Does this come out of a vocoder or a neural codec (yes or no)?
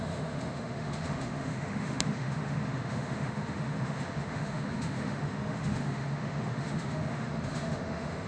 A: yes